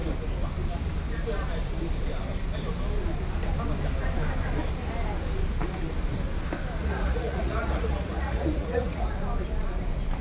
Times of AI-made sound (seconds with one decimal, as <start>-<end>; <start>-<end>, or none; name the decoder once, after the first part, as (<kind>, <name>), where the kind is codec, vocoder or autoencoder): 6.8-9.1 (vocoder, Vocos)